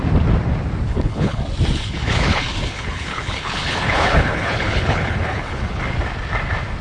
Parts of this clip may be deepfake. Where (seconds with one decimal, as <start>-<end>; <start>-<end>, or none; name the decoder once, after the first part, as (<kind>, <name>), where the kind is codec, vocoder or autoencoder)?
0.9-1.4 (codec, HILCodec); 1.8-5.8